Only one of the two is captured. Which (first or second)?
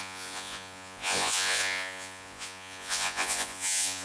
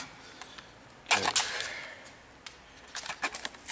second